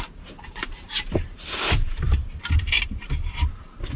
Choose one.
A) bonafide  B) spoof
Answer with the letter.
B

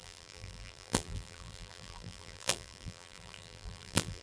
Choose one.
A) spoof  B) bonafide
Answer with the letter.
A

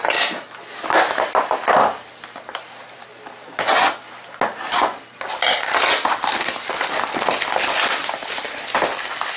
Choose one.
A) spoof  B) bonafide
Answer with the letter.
B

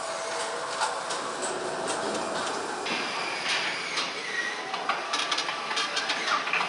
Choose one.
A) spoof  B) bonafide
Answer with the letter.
B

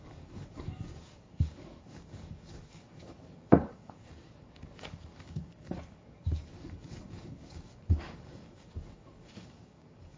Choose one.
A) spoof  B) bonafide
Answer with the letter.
A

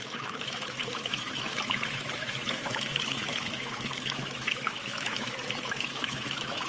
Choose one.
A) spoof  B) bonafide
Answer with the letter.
A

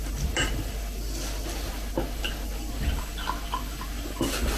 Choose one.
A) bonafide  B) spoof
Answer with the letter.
A